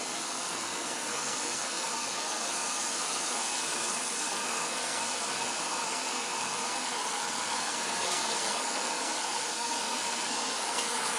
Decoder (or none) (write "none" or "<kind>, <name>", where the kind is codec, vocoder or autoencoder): codec, SNAC